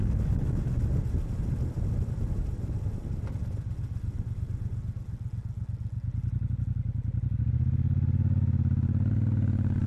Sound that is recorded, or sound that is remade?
recorded